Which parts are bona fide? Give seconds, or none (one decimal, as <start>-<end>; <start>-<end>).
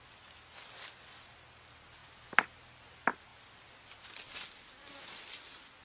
0.0-2.0; 2.8-5.8